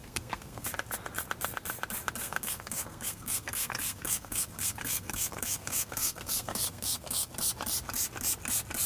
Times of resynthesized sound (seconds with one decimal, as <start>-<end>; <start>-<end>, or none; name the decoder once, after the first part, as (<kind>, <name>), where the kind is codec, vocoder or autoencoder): 0.0-0.7 (codec, SNAC); 2.2-7.3